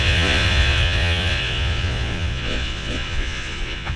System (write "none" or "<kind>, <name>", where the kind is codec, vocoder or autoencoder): vocoder, Vocos